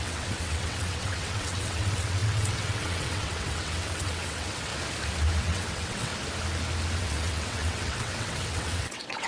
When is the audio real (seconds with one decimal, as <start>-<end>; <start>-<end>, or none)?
4.7-5.4; 6.1-7.0